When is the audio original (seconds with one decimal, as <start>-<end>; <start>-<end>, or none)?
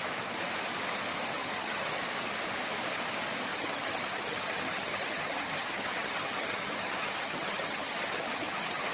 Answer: 0.0-1.4; 2.0-3.5